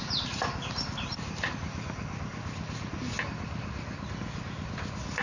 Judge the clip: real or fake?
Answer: real